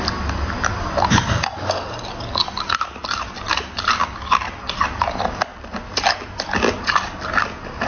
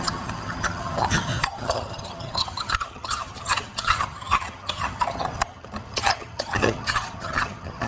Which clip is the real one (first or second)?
first